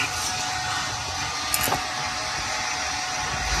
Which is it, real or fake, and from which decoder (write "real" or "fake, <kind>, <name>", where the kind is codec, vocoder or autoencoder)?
real